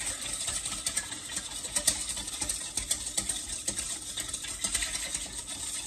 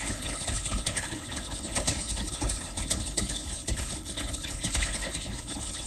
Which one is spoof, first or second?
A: second